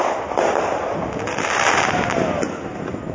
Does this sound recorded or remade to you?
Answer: recorded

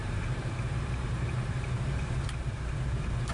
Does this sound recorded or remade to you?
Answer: remade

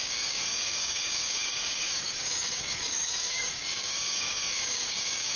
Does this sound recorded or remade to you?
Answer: remade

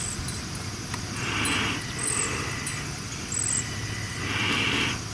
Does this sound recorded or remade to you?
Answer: recorded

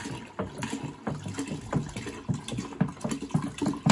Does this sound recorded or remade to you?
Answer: recorded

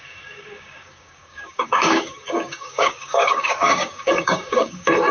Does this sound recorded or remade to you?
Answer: remade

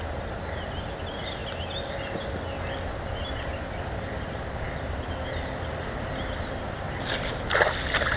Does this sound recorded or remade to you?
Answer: recorded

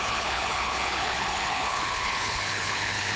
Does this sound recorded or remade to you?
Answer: remade